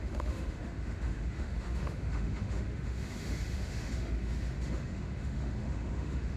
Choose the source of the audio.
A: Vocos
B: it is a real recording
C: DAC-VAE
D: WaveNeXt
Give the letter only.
C